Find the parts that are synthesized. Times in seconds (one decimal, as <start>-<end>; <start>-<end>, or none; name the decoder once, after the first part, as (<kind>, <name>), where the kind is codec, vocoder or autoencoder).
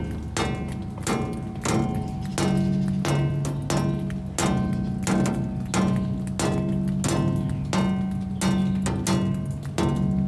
none